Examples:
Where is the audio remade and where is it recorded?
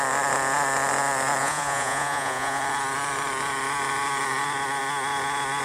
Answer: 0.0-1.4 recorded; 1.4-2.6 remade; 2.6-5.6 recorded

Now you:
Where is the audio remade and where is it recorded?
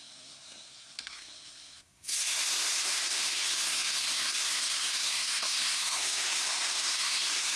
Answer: 0.0-7.6 remade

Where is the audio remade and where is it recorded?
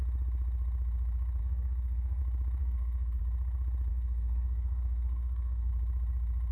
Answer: 0.0-1.4 recorded; 1.4-2.2 remade; 2.2-2.6 recorded; 2.6-3.2 remade; 3.2-3.9 recorded; 3.9-5.7 remade; 5.7-6.5 recorded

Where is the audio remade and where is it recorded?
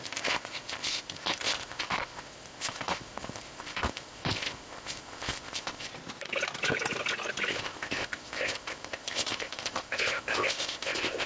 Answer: 0.0-5.9 remade; 5.9-7.5 recorded; 7.5-11.3 remade